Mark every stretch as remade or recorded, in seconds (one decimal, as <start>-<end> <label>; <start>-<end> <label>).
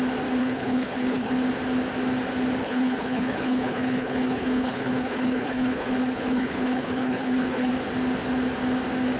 0.0-0.4 recorded; 0.4-1.3 remade; 1.3-2.6 recorded; 2.6-7.7 remade; 7.7-9.2 recorded